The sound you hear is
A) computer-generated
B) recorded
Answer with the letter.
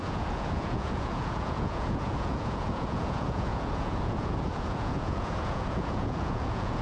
A